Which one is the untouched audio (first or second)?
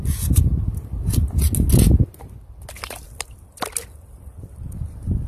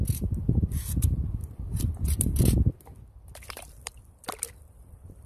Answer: first